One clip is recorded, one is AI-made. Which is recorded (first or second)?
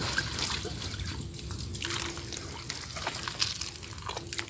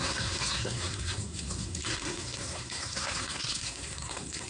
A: first